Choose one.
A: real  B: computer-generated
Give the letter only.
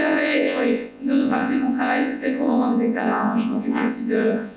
B